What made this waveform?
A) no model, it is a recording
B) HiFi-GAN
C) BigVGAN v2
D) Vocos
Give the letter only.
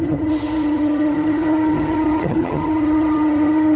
B